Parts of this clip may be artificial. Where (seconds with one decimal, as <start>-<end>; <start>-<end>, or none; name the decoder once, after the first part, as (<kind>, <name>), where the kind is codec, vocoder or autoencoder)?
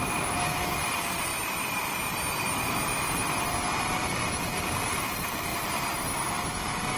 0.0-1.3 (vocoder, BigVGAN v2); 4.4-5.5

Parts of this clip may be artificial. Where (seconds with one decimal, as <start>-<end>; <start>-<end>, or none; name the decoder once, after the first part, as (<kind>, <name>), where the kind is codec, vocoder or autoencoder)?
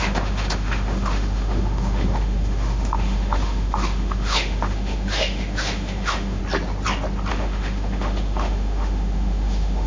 0.0-6.4 (autoencoder, DAC-VAE); 7.3-9.9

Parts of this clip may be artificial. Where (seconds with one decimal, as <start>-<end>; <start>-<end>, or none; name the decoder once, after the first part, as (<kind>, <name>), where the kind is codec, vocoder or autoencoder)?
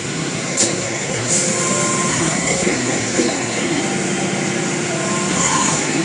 0.0-1.3 (codec, SNAC); 2.1-3.8; 5.3-6.0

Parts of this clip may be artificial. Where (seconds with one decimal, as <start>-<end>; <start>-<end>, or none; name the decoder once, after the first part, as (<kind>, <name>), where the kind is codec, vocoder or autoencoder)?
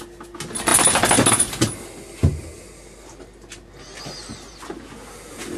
none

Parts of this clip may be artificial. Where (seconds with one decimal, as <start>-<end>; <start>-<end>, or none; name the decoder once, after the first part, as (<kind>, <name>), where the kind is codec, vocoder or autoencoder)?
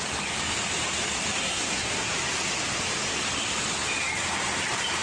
1.4-2.1 (codec, SNAC)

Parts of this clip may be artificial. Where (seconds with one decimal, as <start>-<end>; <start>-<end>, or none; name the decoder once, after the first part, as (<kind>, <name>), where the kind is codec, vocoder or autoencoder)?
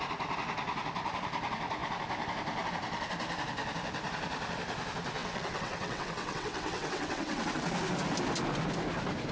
5.2-7.6 (vocoder, WaveNeXt)